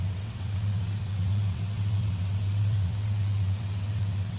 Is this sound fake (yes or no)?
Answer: yes